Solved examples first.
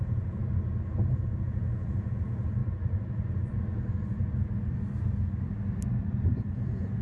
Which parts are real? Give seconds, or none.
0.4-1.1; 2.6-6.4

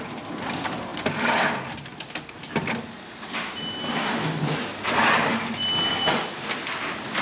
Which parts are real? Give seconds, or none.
0.0-7.2

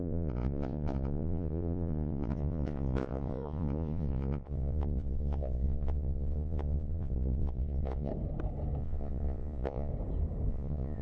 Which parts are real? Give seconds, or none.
8.1-8.8; 9.9-10.5

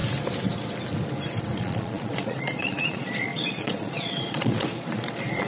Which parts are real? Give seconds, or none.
0.0-1.6

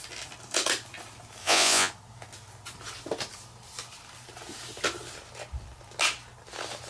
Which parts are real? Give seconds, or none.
0.0-1.4; 1.9-6.9

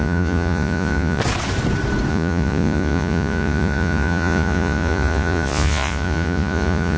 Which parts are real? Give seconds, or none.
1.2-2.1

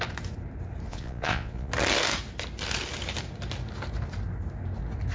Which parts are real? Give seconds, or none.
0.0-0.9; 1.7-5.1